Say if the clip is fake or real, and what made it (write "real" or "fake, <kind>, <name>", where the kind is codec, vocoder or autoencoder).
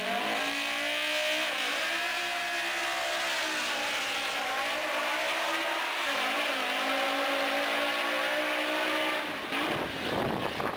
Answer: real